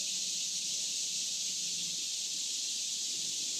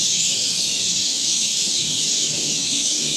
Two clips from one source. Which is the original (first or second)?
first